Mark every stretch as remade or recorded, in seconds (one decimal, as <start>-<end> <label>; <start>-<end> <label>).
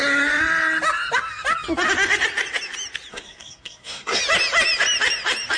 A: 0.0-3.1 recorded; 3.1-4.2 remade; 4.2-5.6 recorded